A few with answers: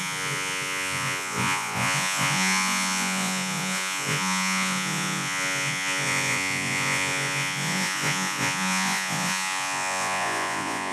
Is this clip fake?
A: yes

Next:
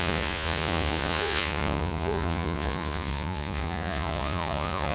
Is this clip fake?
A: yes